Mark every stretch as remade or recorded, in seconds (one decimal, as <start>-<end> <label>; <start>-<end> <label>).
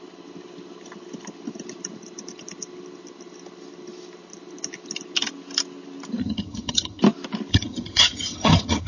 0.0-6.2 recorded; 6.2-7.0 remade; 7.0-7.5 recorded; 7.5-8.9 remade